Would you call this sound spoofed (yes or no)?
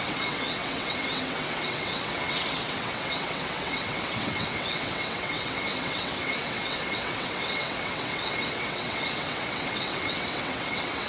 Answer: yes